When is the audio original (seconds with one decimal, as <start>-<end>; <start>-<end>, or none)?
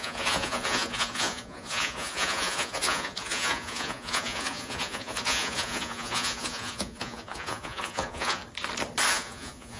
8.4-9.1